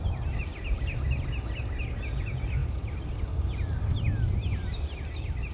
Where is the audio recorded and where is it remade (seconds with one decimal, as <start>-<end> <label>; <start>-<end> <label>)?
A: 0.0-5.5 recorded